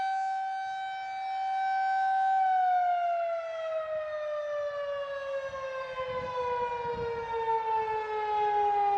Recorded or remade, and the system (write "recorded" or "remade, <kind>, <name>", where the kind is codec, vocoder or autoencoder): recorded